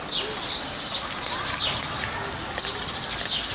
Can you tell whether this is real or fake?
real